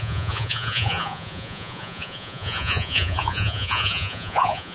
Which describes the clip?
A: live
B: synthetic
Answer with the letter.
B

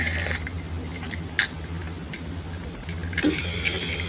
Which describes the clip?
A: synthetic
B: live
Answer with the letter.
B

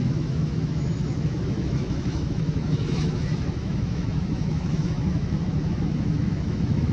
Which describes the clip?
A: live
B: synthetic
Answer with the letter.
B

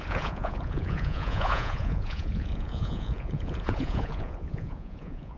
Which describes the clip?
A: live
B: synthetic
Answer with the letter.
B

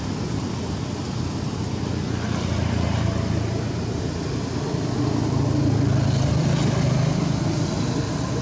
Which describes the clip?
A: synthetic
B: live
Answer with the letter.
B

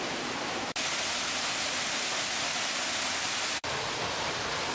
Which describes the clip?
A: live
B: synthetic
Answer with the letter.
A